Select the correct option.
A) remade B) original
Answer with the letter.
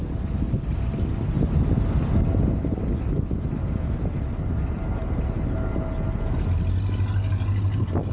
B